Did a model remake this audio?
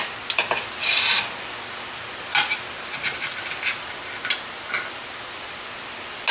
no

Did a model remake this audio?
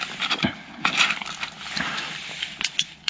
no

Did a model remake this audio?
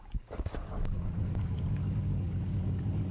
yes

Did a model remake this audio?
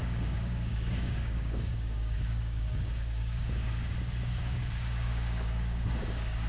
yes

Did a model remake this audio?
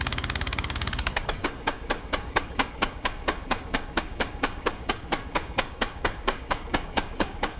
yes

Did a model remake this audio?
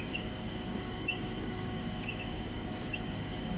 yes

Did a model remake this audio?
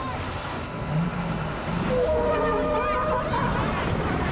no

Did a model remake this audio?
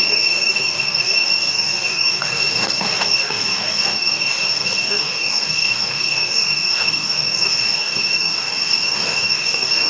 yes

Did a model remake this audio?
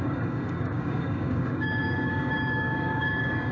yes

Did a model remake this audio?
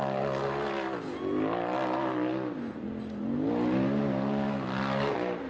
no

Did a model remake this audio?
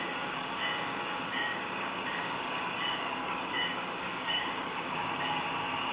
yes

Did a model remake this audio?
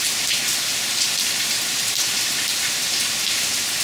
no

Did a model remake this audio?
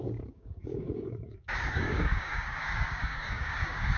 yes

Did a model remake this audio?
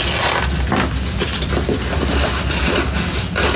no